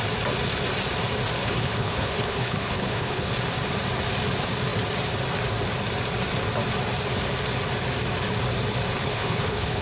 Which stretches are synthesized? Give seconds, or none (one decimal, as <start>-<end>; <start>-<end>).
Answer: 1.4-3.3; 9.0-9.8